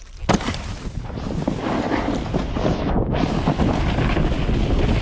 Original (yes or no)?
yes